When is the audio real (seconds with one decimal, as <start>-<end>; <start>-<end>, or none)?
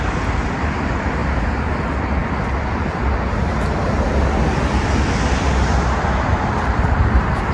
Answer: 0.0-7.5